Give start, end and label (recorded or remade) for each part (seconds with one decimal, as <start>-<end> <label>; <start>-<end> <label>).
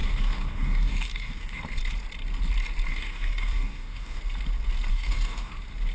0.0-1.6 remade; 1.6-2.9 recorded; 2.9-4.2 remade; 4.2-4.9 recorded; 4.9-5.5 remade; 5.5-5.9 recorded